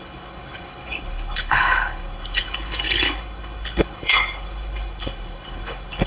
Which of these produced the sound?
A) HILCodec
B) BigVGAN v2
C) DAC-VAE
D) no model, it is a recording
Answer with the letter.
A